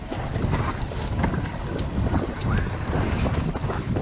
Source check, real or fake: real